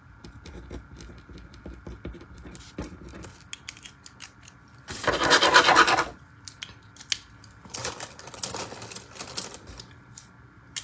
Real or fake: real